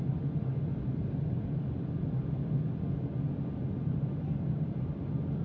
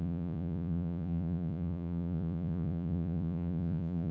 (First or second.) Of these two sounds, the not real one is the second